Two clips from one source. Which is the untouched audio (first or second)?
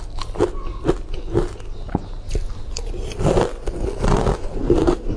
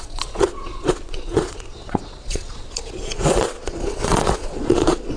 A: first